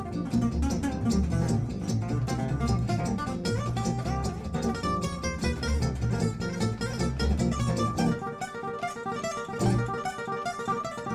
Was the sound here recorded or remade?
recorded